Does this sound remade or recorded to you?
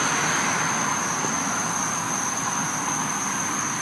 recorded